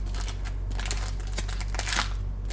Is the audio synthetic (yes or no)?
no